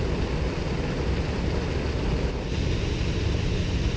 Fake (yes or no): no